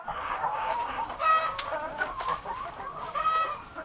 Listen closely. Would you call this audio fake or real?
fake